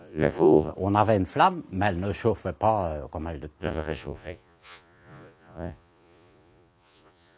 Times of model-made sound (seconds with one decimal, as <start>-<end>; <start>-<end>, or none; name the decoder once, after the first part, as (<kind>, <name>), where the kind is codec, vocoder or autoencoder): 0.0-0.7 (vocoder, Vocos); 3.6-7.4